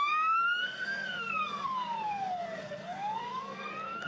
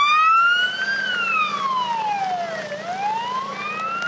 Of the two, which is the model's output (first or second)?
first